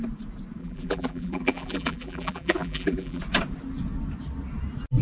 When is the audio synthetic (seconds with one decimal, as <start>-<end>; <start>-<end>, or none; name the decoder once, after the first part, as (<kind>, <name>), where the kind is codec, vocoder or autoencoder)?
0.6-3.2 (vocoder, BigVGAN v2)